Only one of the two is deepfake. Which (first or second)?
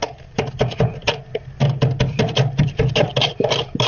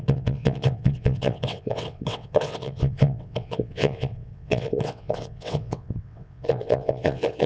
second